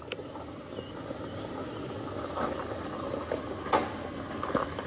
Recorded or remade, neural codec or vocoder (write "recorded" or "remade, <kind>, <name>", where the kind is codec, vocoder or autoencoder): recorded